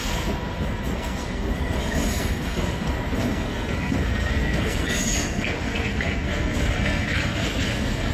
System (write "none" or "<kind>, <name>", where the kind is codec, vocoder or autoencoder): codec, SNAC